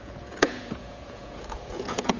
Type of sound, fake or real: fake